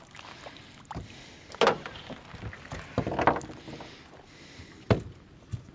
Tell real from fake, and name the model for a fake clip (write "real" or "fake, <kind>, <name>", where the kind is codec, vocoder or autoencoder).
real